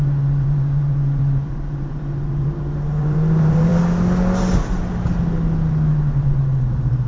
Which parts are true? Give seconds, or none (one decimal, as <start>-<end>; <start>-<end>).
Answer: 3.7-6.6